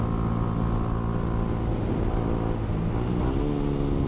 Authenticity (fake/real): real